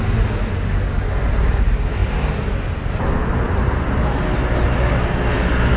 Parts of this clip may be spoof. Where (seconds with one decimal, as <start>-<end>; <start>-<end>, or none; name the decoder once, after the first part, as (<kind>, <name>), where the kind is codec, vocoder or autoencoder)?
none